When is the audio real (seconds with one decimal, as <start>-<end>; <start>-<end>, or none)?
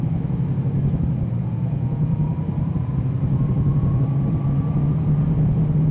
0.0-1.4; 2.3-5.9